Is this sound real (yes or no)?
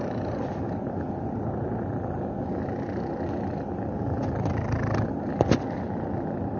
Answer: yes